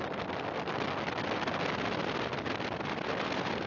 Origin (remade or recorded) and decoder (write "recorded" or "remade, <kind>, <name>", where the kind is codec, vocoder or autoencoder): recorded